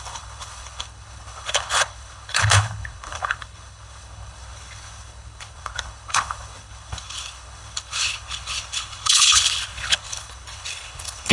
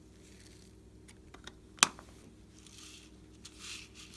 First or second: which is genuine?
second